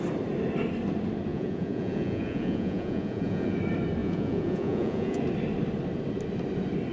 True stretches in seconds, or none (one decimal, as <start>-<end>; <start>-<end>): 0.0-1.3; 3.6-4.0; 5.2-6.9